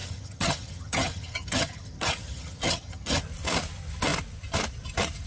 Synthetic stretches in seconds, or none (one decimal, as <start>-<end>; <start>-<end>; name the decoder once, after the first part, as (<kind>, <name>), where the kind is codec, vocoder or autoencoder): 0.0-3.2 (vocoder, HiFi-GAN)